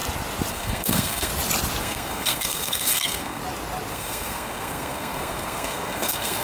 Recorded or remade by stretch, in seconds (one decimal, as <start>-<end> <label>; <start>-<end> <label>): 0.0-0.5 recorded; 0.5-1.3 remade; 1.3-1.8 recorded; 1.8-3.4 remade; 3.4-3.9 recorded; 3.9-6.4 remade